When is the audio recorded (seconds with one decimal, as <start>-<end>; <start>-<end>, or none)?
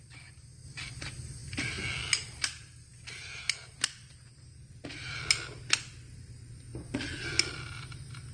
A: 0.0-8.3